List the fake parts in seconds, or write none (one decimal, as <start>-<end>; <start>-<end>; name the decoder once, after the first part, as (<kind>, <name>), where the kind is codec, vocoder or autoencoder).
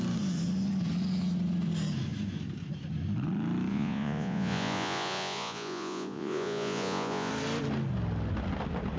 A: 3.7-7.3 (vocoder, Vocos)